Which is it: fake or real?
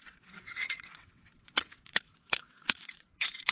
fake